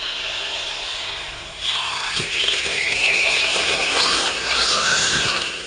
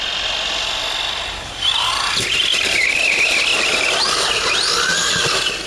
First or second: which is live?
second